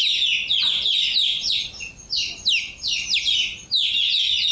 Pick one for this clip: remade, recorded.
recorded